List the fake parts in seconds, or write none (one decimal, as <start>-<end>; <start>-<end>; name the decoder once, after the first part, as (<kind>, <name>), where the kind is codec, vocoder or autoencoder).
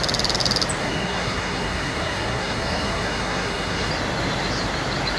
0.8-3.9 (codec, SNAC)